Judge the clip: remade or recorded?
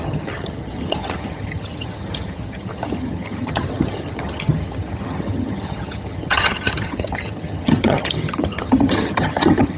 remade